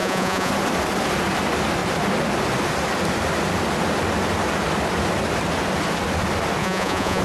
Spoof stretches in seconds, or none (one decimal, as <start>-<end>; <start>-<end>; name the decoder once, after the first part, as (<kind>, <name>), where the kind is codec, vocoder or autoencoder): 0.0-0.5 (vocoder, Vocos); 6.6-7.2